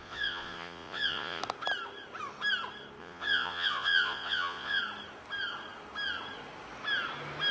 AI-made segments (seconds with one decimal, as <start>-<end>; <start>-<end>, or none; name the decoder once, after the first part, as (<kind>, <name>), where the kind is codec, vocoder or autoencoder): 0.0-1.4 (vocoder, Vocos); 3.0-4.8